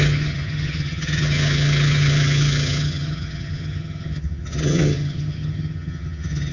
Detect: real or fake fake